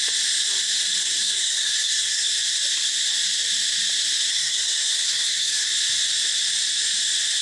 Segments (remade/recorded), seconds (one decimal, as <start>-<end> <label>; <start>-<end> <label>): 0.0-1.0 recorded; 1.0-2.3 remade; 2.3-4.3 recorded; 4.3-5.7 remade; 5.7-7.4 recorded